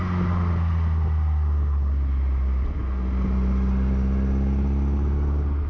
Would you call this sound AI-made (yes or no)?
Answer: no